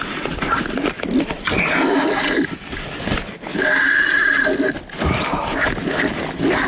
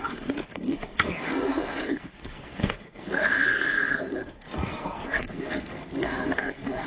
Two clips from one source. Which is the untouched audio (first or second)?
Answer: first